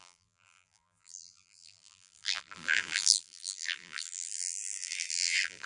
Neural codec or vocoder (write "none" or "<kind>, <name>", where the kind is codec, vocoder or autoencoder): vocoder, BigVGAN v2